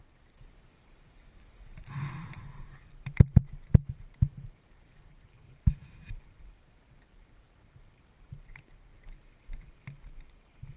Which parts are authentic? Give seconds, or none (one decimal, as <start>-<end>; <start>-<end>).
3.7-4.5; 8.9-9.6